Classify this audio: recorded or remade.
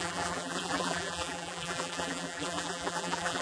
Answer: remade